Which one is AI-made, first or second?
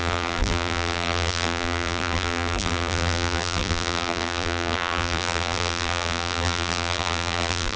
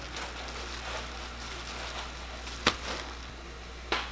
first